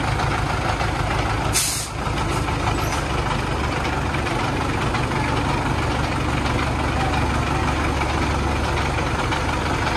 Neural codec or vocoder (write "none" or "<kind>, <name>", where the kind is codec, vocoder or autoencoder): none